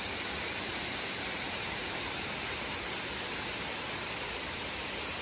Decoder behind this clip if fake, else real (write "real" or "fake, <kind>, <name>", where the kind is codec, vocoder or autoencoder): real